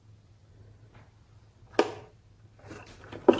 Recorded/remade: recorded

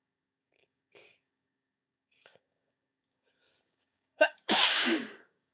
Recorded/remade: remade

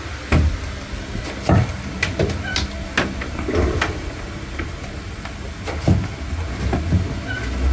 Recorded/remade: recorded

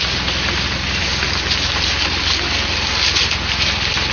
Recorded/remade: recorded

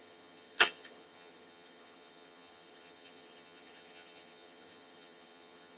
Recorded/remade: remade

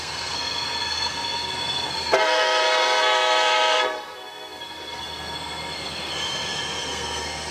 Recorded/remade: remade